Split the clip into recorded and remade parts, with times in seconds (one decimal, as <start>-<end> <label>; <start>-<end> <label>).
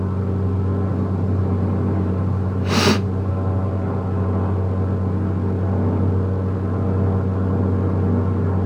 0.0-0.9 recorded; 0.9-3.3 remade; 3.3-8.7 recorded